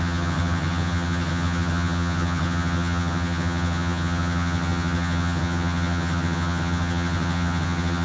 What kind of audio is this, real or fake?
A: fake